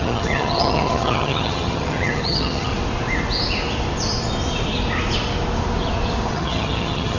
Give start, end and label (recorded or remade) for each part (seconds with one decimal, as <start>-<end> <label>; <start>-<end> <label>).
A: 0.0-2.7 remade; 2.7-6.3 recorded; 6.3-7.2 remade